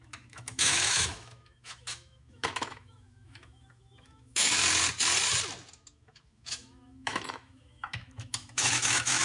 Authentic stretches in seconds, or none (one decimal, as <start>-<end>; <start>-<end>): 4.6-5.7